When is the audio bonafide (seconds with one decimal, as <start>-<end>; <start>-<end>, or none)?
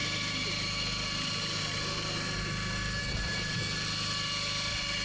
0.0-5.0